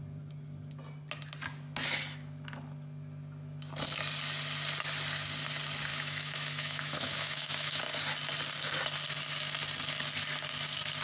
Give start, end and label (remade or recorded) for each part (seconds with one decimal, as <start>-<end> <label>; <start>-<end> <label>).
0.0-5.9 recorded; 5.9-7.8 remade; 7.8-11.0 recorded